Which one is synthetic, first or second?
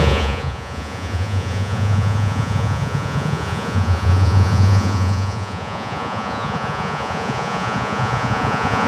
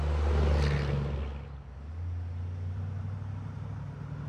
first